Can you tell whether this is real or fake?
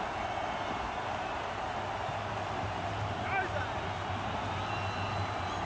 real